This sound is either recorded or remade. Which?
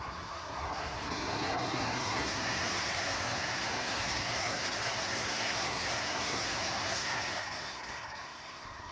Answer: remade